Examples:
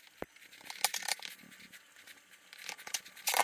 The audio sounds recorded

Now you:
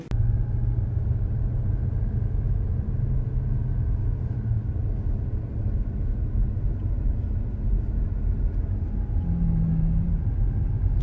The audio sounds recorded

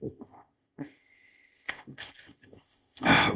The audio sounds remade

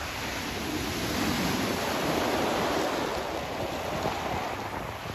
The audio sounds recorded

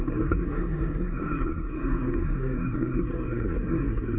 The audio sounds remade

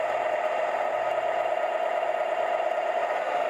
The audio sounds recorded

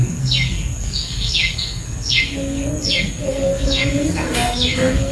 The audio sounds remade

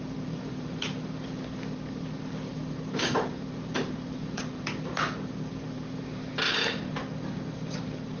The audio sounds remade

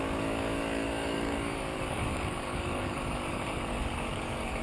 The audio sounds remade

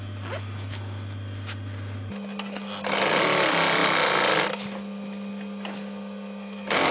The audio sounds recorded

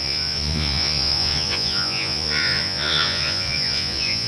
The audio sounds remade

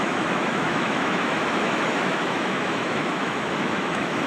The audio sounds remade